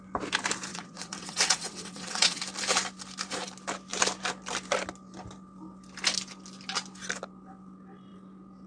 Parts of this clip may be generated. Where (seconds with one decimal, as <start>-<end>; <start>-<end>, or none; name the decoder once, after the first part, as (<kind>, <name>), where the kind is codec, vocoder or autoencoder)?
0.7-2.4 (vocoder, WaveNeXt)